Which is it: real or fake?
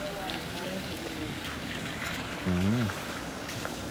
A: fake